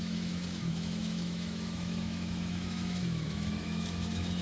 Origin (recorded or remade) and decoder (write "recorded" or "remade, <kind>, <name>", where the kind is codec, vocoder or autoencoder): remade, autoencoder, DAC-VAE